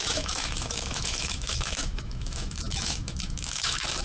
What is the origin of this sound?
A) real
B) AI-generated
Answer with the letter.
B